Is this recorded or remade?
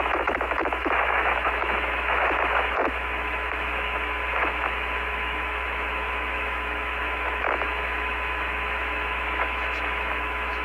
remade